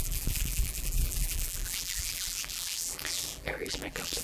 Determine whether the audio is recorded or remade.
remade